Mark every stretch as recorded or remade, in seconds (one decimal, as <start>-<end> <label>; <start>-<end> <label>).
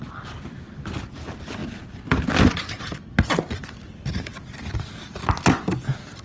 0.0-6.2 recorded